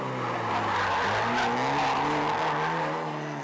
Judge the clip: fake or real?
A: real